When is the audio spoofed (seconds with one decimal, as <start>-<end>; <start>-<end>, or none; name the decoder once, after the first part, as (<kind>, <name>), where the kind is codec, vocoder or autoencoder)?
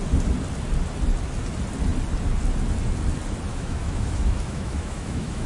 3.5-5.5 (autoencoder, DAC-VAE)